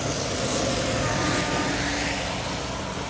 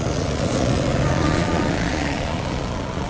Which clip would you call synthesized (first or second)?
second